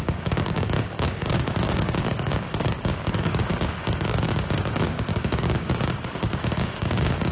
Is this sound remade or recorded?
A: remade